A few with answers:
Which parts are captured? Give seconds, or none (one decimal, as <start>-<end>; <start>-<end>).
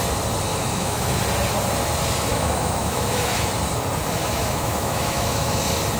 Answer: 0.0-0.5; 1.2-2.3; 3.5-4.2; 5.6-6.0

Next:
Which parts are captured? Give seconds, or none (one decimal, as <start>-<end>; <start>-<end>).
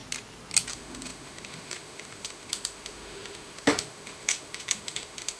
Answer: 0.0-0.7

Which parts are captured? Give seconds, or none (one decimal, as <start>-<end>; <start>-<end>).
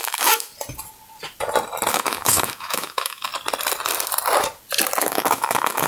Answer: 0.5-1.9; 3.3-5.0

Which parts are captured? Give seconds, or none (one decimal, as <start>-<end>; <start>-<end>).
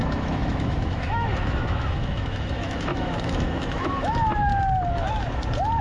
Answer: 4.5-5.8